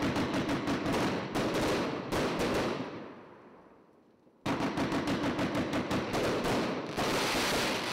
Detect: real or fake real